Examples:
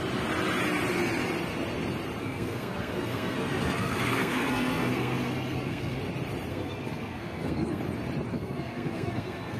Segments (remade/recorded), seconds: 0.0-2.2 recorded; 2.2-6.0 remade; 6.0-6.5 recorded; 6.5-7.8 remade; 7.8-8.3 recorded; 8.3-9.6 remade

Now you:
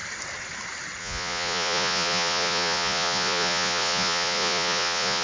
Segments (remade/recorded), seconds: 0.0-1.0 recorded; 1.0-5.2 remade

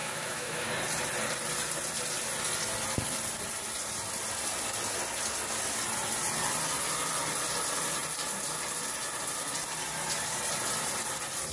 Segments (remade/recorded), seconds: 0.0-0.7 remade; 0.7-11.5 recorded

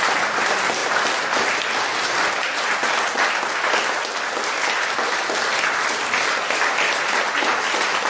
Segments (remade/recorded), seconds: 0.0-8.1 recorded